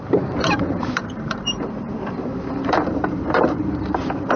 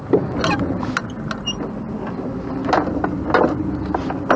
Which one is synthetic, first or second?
first